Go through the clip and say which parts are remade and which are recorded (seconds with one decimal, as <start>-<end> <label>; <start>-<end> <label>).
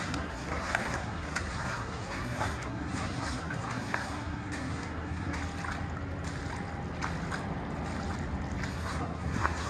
0.0-5.4 remade; 5.4-8.7 recorded; 8.7-9.7 remade